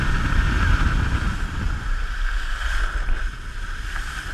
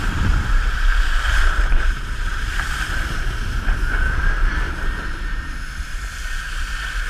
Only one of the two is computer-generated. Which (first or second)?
second